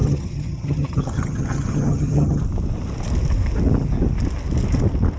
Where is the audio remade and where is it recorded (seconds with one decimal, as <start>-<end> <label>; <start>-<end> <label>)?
0.0-2.4 remade; 2.4-5.2 recorded